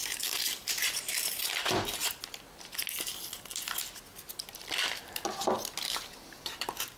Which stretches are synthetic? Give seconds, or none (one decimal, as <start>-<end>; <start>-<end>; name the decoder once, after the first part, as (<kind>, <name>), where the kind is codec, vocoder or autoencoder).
0.0-2.0 (vocoder, BigVGAN v2); 5.8-7.0